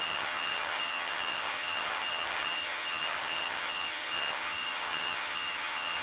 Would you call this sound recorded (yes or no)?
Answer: no